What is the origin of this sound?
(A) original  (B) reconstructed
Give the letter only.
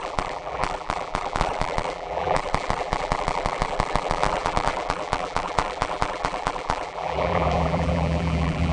B